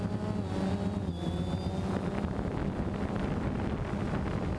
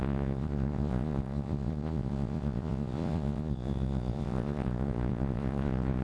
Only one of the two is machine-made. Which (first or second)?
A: second